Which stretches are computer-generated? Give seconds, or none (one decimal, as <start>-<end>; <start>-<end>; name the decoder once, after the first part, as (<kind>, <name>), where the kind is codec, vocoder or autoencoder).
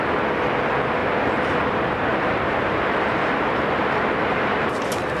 1.0-1.6 (vocoder, BigVGAN v2); 2.1-5.2